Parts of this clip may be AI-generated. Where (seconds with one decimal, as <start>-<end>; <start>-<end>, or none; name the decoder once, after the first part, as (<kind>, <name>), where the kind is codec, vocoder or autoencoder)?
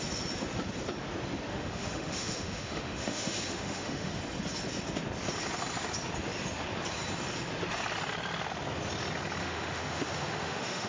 1.5-4.2 (autoencoder, DAC-VAE); 9.4-10.9